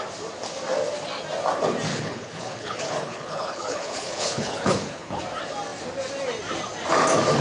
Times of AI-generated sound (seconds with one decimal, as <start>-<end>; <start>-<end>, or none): 1.9-5.2